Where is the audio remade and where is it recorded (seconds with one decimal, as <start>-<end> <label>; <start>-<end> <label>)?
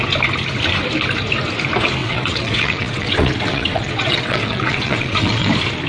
0.0-2.0 recorded; 2.0-5.5 remade; 5.5-5.9 recorded